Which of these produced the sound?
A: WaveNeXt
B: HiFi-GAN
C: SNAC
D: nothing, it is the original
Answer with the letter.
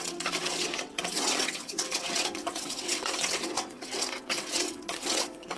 A